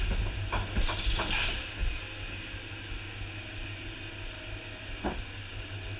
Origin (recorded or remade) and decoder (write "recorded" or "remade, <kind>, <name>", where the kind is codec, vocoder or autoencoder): recorded